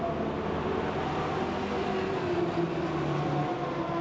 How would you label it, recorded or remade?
recorded